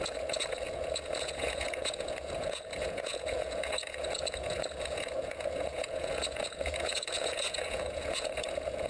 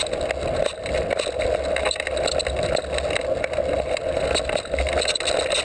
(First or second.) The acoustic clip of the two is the second